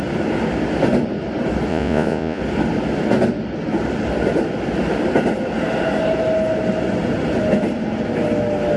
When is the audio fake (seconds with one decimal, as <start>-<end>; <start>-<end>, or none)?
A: 1.7-2.4

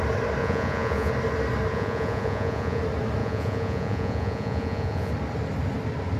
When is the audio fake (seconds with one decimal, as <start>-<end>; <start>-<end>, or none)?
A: 0.4-1.1; 1.7-2.8; 3.2-5.1